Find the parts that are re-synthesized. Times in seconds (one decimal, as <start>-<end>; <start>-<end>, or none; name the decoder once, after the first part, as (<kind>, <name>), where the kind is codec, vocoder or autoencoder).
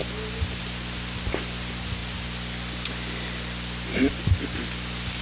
none